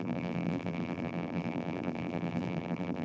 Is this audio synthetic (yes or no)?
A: yes